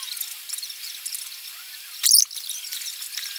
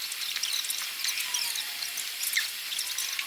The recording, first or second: second